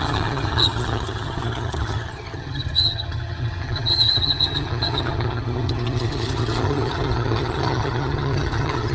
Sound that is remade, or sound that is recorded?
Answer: remade